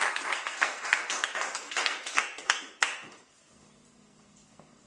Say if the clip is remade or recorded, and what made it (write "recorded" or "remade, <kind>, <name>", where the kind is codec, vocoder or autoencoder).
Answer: remade, codec, SNAC